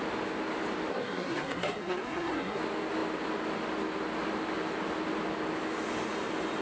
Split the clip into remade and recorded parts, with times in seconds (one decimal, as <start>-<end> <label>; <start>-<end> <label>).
0.0-0.9 recorded; 0.9-2.6 remade; 2.6-6.6 recorded